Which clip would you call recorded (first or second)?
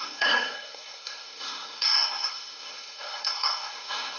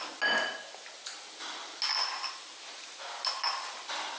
second